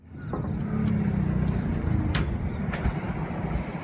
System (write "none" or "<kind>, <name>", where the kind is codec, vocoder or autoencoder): none